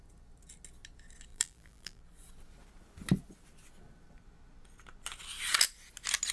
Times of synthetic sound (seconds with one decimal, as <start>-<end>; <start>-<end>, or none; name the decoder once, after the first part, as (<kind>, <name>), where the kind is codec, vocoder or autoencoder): 1.3-2.0 (vocoder, BigVGAN v2)